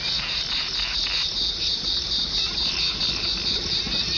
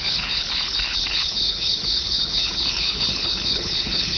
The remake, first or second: second